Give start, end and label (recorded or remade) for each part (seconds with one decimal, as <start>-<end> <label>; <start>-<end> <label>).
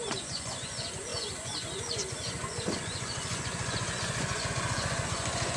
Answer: 0.0-5.6 remade